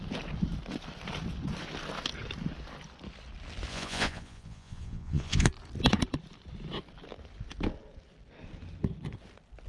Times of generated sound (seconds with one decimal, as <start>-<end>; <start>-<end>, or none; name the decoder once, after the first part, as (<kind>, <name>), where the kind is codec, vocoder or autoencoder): 3.7-5.5 (vocoder, Vocos)